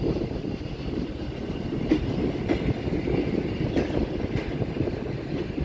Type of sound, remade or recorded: recorded